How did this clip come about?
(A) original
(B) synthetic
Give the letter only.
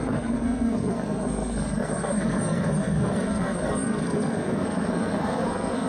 B